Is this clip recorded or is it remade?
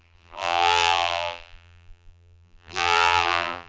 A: remade